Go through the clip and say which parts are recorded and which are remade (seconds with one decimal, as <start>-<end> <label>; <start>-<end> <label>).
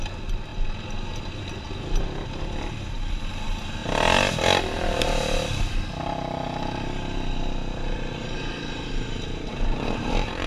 0.0-7.6 recorded; 7.6-10.5 remade